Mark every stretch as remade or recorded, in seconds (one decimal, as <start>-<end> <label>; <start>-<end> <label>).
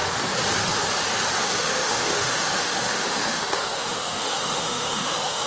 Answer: 0.0-1.4 recorded; 1.4-5.5 remade